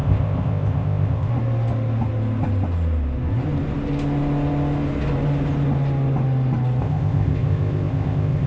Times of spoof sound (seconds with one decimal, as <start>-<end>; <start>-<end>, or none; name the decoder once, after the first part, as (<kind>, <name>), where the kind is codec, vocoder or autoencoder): 0.0-1.3 (codec, ZipCodec); 6.8-8.5